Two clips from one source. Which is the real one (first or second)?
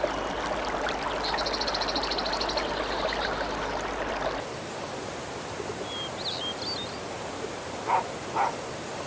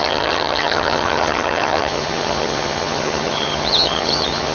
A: first